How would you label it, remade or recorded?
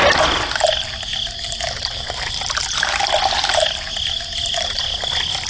recorded